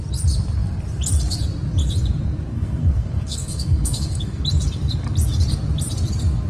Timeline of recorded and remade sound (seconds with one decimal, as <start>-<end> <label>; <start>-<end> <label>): 0.0-2.5 recorded; 2.5-4.4 remade; 4.4-6.5 recorded

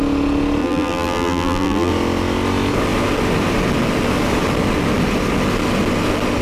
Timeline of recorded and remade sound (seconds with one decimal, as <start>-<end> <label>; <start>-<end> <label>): 0.0-0.6 recorded; 0.6-1.9 remade; 1.9-6.4 recorded